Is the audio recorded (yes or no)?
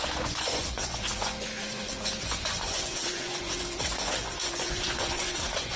no